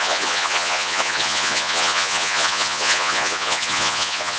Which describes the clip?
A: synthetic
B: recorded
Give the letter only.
A